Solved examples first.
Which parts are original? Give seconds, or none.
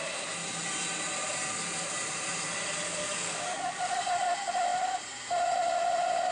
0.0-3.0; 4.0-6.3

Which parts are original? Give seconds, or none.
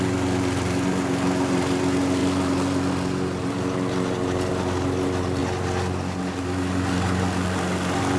0.0-8.2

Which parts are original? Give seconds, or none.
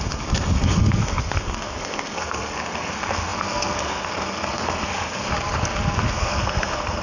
5.3-6.1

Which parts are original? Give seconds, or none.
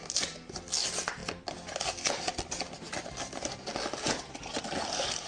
0.0-5.3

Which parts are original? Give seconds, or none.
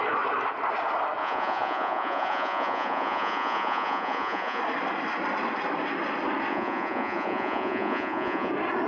0.0-1.2; 4.6-6.5; 8.5-8.9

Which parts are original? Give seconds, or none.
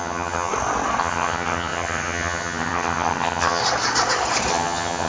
0.5-1.0; 3.6-4.5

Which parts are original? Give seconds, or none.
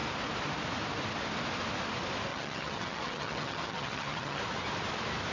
0.0-2.3; 4.4-5.3